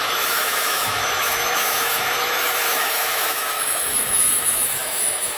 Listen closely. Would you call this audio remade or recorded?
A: remade